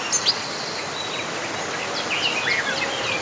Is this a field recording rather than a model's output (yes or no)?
yes